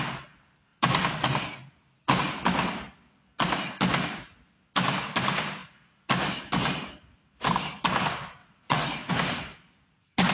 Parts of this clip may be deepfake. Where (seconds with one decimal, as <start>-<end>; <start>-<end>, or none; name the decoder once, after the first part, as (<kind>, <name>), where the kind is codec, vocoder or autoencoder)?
8.4-9.1 (vocoder, WaveNeXt)